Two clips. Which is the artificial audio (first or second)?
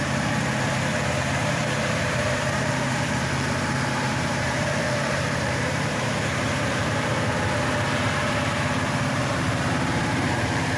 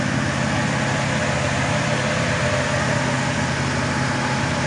first